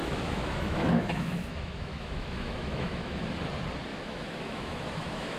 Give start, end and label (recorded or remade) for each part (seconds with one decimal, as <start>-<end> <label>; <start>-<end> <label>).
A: 0.0-3.2 remade; 3.2-3.9 recorded; 3.9-5.4 remade